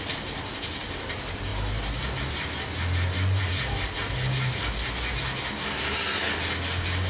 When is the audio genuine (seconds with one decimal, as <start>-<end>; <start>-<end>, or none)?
0.0-7.1